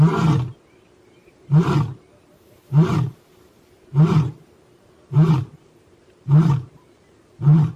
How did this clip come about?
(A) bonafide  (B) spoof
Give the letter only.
B